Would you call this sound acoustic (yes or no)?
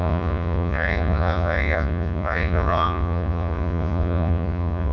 no